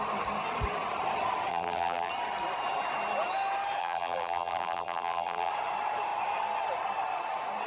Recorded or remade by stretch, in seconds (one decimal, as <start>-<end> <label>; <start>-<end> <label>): 0.0-1.5 recorded; 1.5-2.1 remade; 2.1-3.8 recorded; 3.8-5.5 remade; 5.5-7.7 recorded